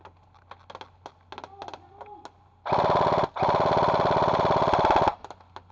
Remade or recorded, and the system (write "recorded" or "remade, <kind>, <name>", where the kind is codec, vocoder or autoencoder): recorded